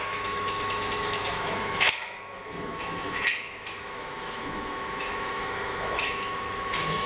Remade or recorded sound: remade